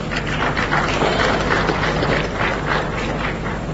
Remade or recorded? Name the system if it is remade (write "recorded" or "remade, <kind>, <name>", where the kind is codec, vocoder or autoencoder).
recorded